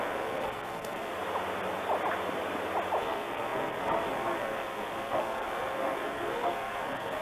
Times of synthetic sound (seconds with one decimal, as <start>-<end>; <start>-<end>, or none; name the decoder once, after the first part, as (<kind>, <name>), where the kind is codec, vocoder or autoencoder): 0.0-1.1 (codec, SNAC); 3.0-7.2